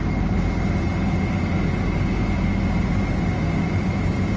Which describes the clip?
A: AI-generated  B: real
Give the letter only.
B